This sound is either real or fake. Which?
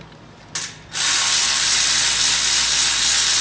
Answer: real